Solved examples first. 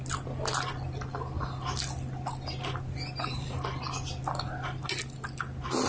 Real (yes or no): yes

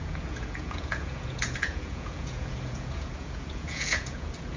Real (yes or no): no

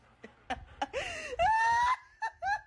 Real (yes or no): yes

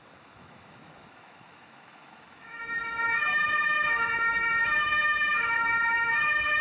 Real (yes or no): no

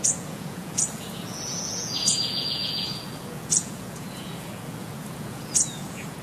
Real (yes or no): no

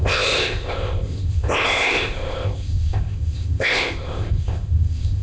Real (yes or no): no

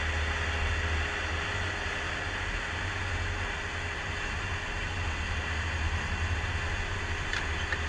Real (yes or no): yes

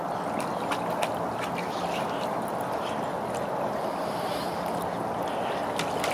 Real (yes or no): yes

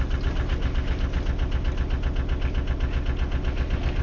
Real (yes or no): yes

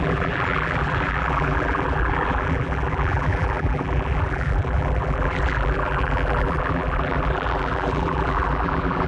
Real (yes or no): no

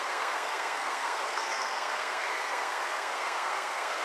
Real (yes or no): no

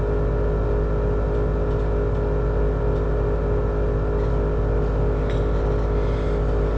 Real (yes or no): yes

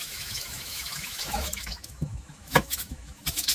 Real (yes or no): no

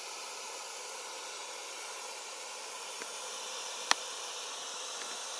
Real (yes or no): yes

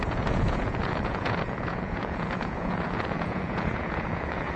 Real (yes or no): no